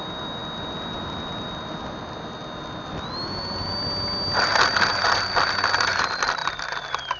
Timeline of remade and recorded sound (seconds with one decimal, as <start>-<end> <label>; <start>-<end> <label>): 0.0-7.2 recorded